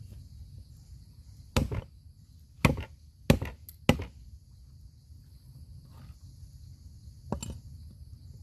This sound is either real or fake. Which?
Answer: real